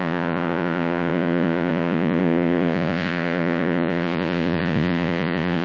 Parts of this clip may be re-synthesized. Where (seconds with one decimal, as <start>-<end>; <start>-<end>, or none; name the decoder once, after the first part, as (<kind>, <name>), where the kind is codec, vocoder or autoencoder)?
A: 0.0-5.6 (vocoder, Vocos)